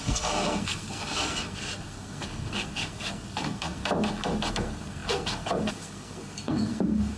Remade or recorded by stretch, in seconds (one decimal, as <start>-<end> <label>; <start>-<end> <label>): 0.0-3.8 remade; 3.8-4.5 recorded; 4.5-7.2 remade